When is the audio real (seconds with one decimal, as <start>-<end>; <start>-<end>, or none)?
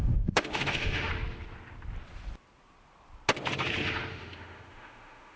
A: 1.1-4.1